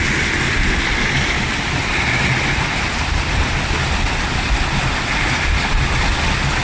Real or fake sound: real